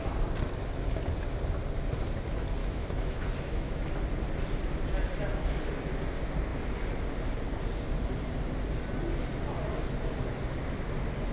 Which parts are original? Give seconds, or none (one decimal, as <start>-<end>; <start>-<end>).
0.0-2.6; 3.8-11.3